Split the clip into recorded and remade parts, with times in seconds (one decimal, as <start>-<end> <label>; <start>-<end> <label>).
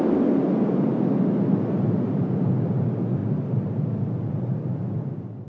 0.0-3.2 recorded; 3.2-4.3 remade; 4.3-5.5 recorded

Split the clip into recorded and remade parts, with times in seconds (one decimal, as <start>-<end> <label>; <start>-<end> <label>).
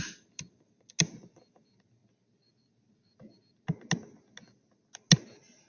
0.0-5.7 recorded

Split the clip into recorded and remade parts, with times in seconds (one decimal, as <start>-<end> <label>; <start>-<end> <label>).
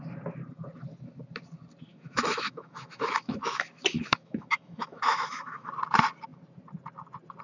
0.0-1.9 recorded; 1.9-5.7 remade; 5.7-7.4 recorded